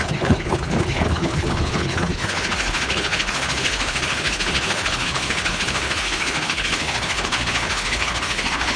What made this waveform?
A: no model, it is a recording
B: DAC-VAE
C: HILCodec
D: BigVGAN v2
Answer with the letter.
C